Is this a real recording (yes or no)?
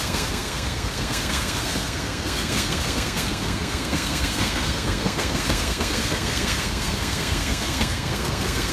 no